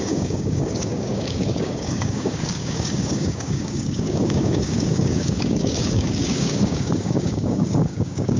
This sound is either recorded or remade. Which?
remade